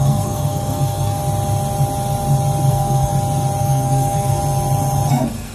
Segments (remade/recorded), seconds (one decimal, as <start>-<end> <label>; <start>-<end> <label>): 0.0-1.2 remade; 1.2-2.7 recorded; 2.7-3.1 remade; 3.1-3.6 recorded; 3.6-4.4 remade; 4.4-5.1 recorded; 5.1-5.5 remade